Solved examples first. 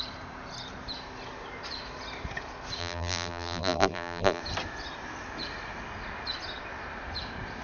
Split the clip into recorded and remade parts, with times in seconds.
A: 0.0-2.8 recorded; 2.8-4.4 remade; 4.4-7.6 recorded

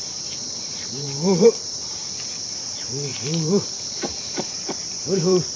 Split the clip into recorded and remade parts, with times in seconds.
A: 0.0-2.0 remade; 2.0-2.5 recorded; 2.5-5.6 remade

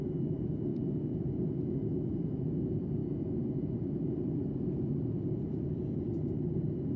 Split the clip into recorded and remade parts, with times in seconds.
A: 0.0-7.0 recorded

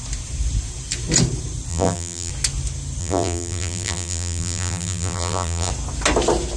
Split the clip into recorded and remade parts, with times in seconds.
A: 0.0-1.7 recorded; 1.7-2.3 remade; 2.3-3.0 recorded; 3.0-5.7 remade; 5.7-6.6 recorded

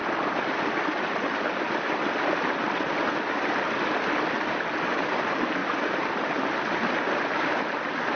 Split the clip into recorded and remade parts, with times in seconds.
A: 0.0-5.6 recorded; 5.6-6.3 remade; 6.3-8.2 recorded